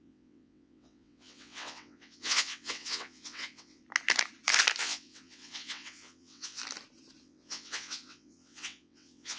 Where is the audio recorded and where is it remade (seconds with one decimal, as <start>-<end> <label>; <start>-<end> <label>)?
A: 0.0-3.8 remade; 3.8-4.8 recorded; 4.8-6.6 remade; 6.6-7.2 recorded; 7.2-9.4 remade